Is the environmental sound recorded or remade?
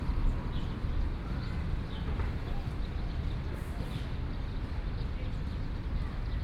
recorded